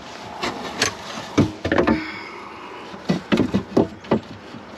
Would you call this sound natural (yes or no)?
yes